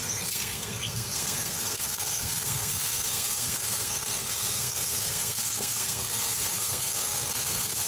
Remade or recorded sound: remade